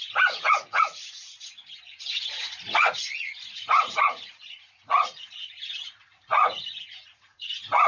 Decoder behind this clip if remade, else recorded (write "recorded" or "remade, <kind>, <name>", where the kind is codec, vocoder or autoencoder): remade, vocoder, Vocos